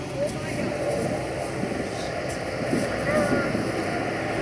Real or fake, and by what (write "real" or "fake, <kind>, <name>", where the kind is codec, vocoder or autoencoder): real